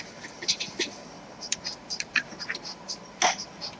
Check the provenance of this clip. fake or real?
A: real